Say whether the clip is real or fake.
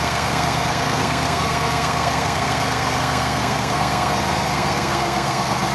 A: fake